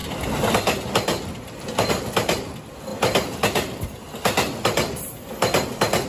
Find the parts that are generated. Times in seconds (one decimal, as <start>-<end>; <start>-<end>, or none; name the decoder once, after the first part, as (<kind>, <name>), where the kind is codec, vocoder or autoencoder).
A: 0.0-1.9 (vocoder, BigVGAN v2); 2.9-5.3